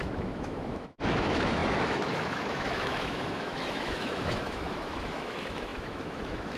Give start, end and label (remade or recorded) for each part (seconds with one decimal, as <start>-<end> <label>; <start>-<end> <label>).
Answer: 0.0-6.6 remade